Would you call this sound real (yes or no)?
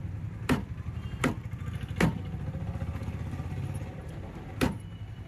yes